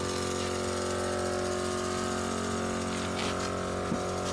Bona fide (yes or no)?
yes